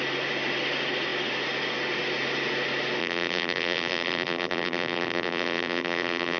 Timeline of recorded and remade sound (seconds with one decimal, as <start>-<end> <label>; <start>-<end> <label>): 0.0-3.0 recorded; 3.0-6.4 remade